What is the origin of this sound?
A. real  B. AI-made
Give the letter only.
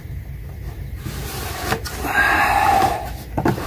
B